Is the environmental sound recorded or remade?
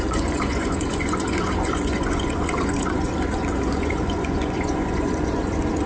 remade